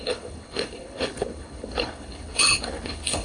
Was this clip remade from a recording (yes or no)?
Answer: yes